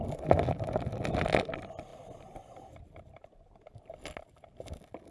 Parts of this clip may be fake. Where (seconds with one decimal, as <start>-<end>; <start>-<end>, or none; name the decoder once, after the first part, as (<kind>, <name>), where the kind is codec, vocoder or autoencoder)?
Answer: none

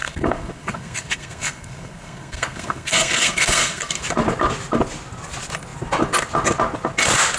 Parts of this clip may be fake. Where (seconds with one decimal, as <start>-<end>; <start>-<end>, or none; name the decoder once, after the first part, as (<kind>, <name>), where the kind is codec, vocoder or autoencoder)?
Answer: 0.0-4.0 (codec, SNAC)

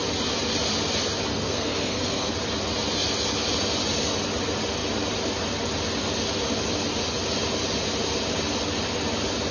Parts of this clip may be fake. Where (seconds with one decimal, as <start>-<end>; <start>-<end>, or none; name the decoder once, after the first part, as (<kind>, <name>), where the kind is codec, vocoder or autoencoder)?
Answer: 1.3-2.3 (codec, SNAC)

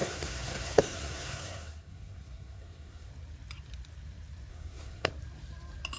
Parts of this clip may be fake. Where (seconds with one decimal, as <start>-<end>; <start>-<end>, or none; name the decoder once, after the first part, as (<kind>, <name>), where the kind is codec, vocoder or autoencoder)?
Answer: 0.0-3.1 (codec, SNAC); 4.5-5.1

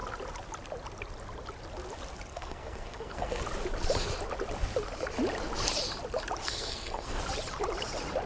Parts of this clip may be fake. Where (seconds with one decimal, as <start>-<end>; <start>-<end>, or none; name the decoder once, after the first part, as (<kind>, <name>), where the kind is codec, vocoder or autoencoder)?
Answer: 2.3-3.4 (codec, SNAC); 6.4-7.2

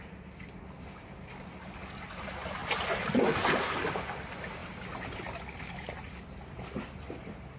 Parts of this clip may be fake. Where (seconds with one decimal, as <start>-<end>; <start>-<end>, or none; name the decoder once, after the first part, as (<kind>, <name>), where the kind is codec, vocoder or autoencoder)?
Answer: none